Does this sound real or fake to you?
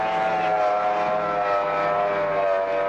real